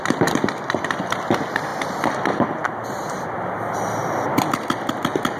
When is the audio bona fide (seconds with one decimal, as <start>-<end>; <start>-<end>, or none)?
0.0-5.4